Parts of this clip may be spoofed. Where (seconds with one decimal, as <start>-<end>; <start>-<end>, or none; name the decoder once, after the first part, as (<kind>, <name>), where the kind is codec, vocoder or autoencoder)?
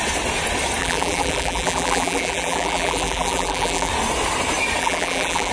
0.8-3.9 (vocoder, BigVGAN v2); 4.8-5.5